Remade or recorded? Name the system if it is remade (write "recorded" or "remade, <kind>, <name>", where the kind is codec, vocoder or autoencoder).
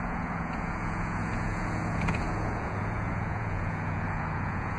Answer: remade, vocoder, Vocos